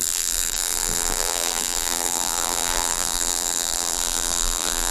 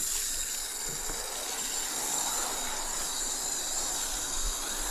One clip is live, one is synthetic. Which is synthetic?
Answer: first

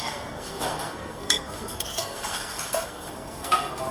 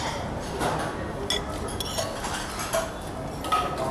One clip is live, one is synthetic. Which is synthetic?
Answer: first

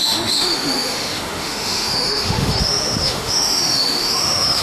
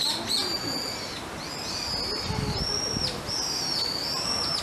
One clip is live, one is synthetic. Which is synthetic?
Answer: first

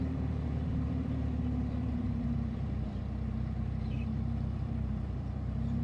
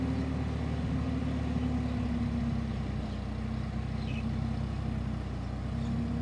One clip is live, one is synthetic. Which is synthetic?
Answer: first